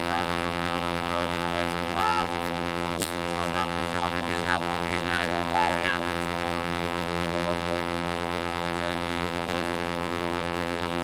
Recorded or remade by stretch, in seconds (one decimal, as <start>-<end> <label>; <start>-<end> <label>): 0.0-11.0 remade